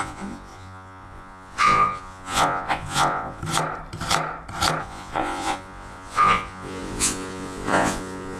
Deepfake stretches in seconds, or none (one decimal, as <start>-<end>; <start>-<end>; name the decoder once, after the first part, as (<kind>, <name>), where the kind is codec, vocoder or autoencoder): 0.0-3.4 (vocoder, Vocos); 4.8-8.4